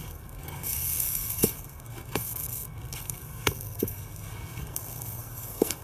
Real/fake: fake